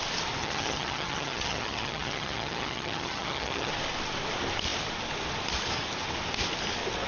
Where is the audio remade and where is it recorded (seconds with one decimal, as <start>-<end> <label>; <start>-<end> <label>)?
0.0-0.4 recorded; 0.4-3.7 remade; 3.7-7.1 recorded

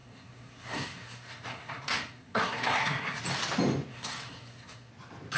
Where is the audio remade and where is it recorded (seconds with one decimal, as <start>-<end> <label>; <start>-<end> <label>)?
0.0-3.2 remade; 3.2-3.9 recorded; 3.9-4.9 remade; 4.9-5.4 recorded

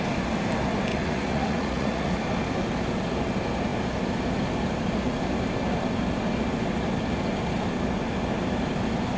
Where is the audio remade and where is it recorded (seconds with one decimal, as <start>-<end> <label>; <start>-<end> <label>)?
0.0-0.9 recorded; 0.9-2.2 remade; 2.2-9.2 recorded

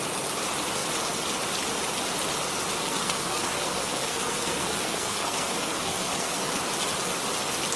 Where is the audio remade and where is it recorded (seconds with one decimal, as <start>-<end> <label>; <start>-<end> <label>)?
0.0-2.8 recorded; 2.8-6.6 remade; 6.6-7.8 recorded

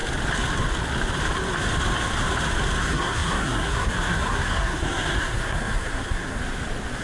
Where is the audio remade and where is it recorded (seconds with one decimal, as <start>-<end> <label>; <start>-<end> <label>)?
0.0-2.8 recorded; 2.8-6.4 remade; 6.4-7.0 recorded

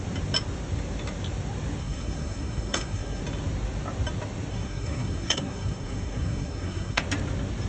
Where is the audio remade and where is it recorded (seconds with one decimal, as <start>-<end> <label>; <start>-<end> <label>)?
0.0-1.8 recorded; 1.8-3.2 remade; 3.2-4.5 recorded; 4.5-7.0 remade; 7.0-7.7 recorded